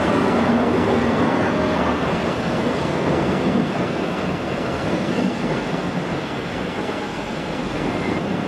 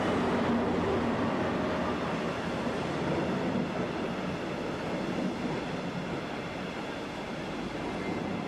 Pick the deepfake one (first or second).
first